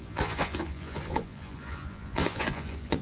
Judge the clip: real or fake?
fake